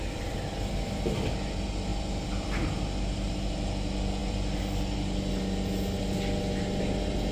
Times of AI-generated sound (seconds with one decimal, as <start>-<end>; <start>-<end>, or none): none